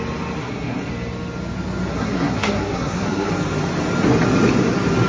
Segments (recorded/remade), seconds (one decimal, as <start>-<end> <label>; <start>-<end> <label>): 0.0-0.4 recorded; 0.4-0.9 remade; 0.9-1.9 recorded; 1.9-3.3 remade; 3.3-5.1 recorded